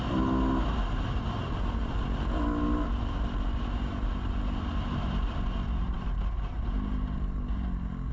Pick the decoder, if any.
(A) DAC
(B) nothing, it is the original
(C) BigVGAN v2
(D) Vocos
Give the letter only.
B